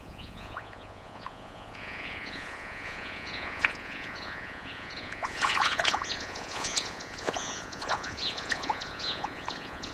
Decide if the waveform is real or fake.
fake